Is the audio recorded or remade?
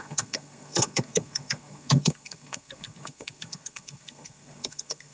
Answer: remade